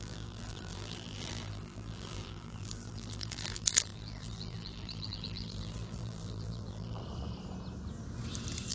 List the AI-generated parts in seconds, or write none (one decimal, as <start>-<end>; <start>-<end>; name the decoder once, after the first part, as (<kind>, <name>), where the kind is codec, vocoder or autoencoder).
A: 0.0-7.0 (vocoder, BigVGAN v2)